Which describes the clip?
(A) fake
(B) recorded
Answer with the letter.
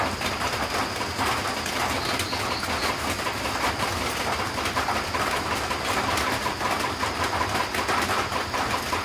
B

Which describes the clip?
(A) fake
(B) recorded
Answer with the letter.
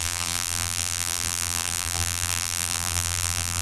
A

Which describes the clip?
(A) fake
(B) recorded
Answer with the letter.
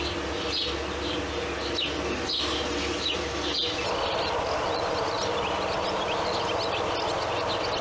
B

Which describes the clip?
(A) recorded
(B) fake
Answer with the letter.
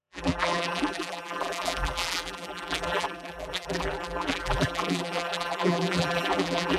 B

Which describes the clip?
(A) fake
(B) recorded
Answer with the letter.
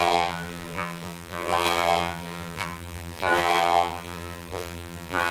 A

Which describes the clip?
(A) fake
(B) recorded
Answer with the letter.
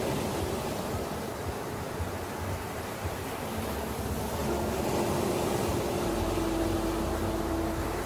B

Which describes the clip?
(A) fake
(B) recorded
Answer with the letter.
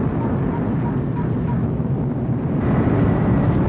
B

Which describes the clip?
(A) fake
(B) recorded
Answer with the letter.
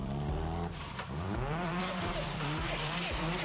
A